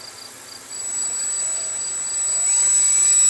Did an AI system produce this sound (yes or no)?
no